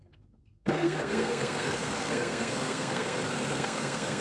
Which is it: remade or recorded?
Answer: remade